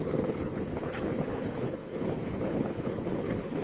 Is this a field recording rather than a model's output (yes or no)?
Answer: no